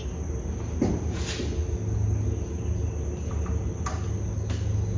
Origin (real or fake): real